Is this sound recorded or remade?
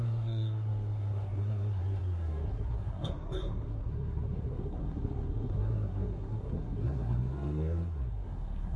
remade